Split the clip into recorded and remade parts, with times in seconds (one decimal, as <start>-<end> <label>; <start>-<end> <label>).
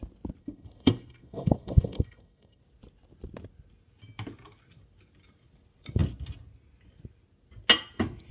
0.0-0.4 recorded; 0.4-2.6 remade; 2.6-8.3 recorded